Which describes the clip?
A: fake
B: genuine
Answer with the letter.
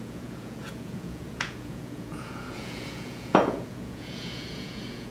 A